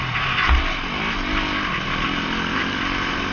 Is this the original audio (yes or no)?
yes